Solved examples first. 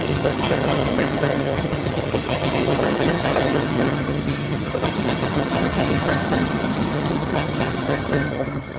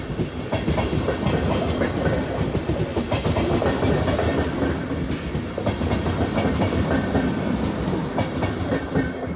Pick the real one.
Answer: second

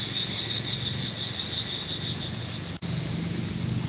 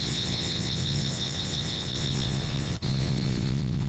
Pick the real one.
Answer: first